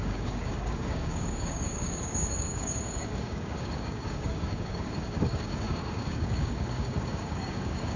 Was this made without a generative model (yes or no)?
no